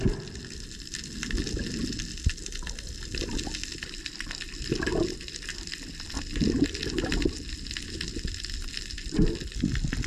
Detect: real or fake real